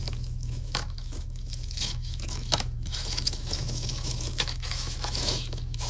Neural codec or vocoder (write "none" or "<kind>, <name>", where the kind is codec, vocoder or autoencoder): autoencoder, DAC-VAE